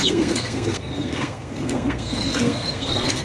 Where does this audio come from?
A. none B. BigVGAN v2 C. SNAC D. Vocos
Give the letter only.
C